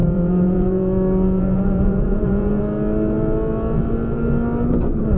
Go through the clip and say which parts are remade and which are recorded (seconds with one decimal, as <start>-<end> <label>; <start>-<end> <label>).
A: 0.0-2.6 remade; 2.6-5.2 recorded